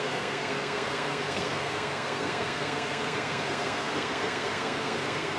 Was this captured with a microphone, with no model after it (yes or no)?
no